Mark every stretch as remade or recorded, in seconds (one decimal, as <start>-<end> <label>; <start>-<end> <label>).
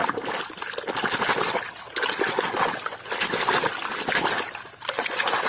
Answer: 0.0-5.5 recorded